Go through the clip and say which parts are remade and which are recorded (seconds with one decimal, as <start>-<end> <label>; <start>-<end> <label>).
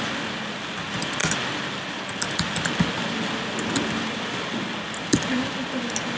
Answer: 0.0-6.2 recorded